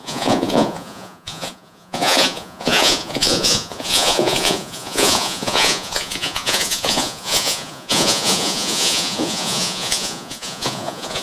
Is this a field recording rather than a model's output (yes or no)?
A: no